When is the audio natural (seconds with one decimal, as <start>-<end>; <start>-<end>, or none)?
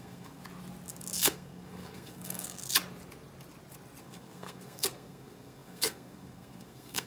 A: 0.4-1.2; 2.6-4.0